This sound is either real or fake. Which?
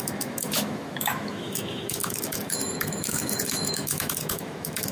fake